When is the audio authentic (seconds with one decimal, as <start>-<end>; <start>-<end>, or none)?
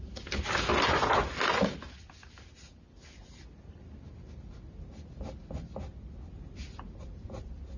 0.0-7.8